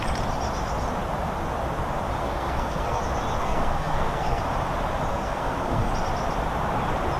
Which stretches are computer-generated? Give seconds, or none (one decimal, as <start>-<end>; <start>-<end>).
2.2-3.0; 3.4-4.4; 5.1-5.9